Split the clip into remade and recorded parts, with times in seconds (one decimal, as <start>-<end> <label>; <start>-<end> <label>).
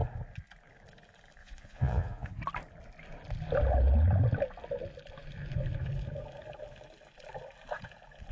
0.0-1.4 recorded; 1.4-2.4 remade; 2.4-8.3 recorded